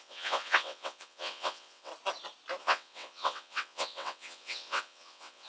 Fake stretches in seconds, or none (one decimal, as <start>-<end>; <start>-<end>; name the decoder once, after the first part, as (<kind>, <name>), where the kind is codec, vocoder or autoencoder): 0.0-1.9 (vocoder, WaveNeXt); 2.6-5.5